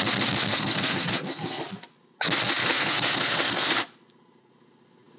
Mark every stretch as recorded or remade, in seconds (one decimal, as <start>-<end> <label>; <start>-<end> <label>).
0.0-0.5 recorded; 0.5-1.6 remade; 1.6-2.6 recorded; 2.6-3.7 remade; 3.7-5.2 recorded